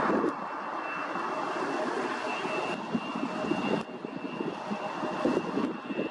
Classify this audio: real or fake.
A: real